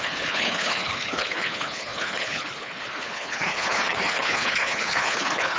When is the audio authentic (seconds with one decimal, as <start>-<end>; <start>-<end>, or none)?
none